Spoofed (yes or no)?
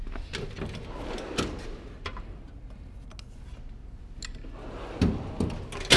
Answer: no